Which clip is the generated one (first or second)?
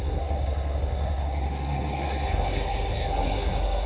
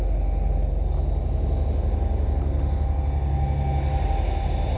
first